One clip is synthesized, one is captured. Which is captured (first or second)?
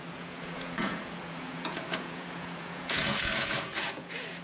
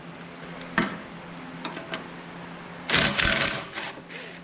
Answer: second